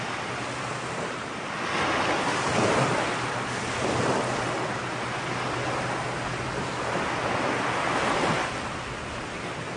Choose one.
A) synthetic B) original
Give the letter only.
B